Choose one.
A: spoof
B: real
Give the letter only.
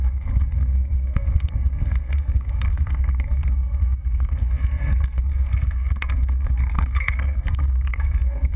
A